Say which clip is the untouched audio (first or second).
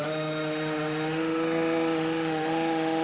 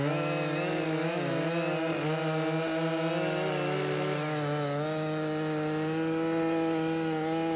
second